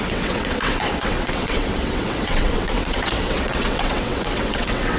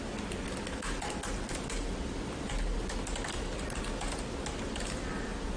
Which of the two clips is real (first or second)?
second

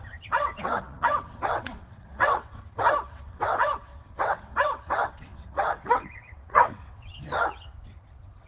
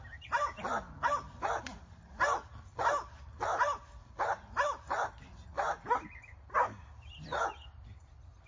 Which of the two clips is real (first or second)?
second